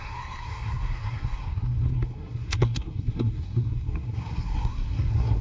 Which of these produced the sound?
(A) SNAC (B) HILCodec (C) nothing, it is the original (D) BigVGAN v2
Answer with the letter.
A